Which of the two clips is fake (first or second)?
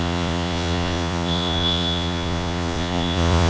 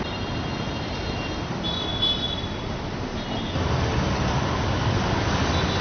first